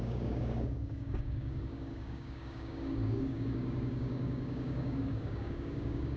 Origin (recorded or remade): remade